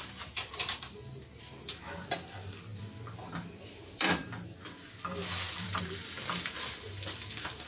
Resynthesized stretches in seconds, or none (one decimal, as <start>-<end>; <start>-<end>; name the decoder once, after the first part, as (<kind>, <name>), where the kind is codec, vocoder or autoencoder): 2.7-5.8 (vocoder, BigVGAN v2)